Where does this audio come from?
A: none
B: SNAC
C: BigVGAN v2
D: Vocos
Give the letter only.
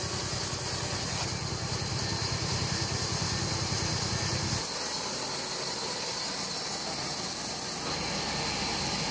A